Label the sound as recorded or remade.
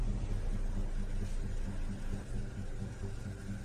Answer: recorded